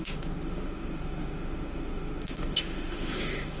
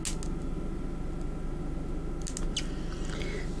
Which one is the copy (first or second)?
first